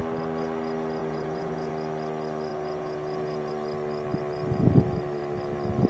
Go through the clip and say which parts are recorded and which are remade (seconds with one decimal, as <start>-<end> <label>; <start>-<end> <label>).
0.0-1.0 recorded; 1.0-1.7 remade; 1.7-2.5 recorded; 2.5-3.5 remade; 3.5-5.9 recorded